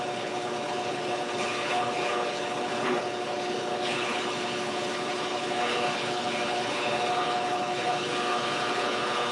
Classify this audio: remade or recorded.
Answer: remade